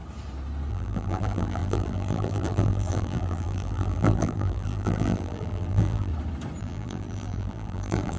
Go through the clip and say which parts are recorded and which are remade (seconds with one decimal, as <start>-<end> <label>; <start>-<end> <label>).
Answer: 0.0-0.7 recorded; 0.7-6.1 remade; 6.1-6.6 recorded; 6.6-8.2 remade